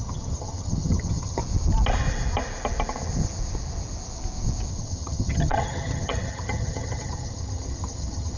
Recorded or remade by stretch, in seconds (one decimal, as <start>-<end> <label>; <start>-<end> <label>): 0.0-1.4 remade; 1.4-4.7 recorded; 4.7-8.4 remade